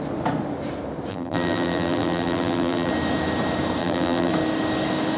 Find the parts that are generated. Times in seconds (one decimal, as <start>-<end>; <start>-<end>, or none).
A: 1.1-2.9; 3.8-4.3